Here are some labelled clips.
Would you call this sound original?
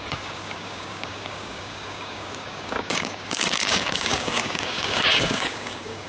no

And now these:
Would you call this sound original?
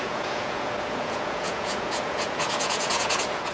no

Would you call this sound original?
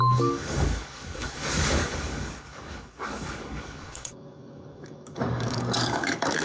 no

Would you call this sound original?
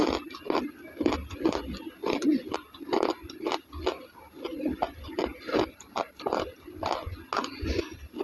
yes